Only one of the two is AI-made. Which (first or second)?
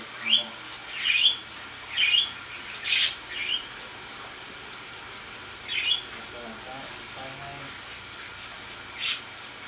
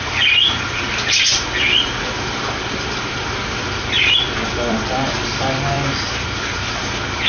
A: second